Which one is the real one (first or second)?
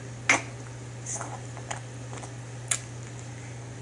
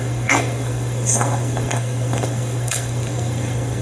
first